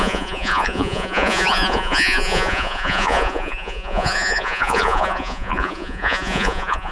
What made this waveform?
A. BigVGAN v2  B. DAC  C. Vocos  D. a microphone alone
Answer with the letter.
C